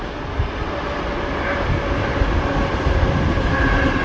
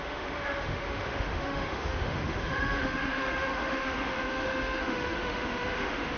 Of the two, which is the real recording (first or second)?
first